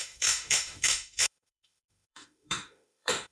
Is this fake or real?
fake